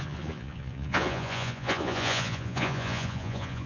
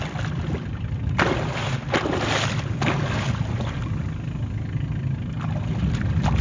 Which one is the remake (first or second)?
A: first